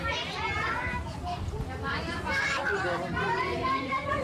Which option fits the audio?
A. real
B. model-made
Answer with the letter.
B